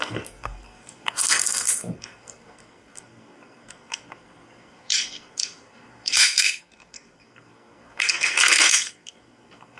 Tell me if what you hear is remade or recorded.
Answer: remade